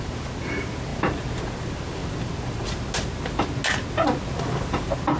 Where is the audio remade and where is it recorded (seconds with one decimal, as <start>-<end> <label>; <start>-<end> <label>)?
0.0-5.2 recorded